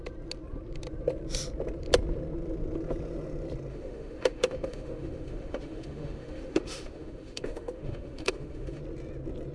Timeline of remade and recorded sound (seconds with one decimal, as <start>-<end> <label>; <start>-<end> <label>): 0.0-3.7 recorded; 3.7-8.8 remade; 8.8-9.5 recorded